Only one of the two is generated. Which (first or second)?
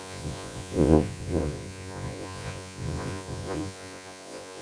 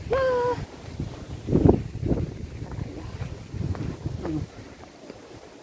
first